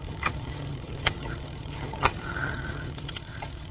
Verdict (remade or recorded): remade